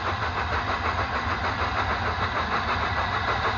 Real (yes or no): yes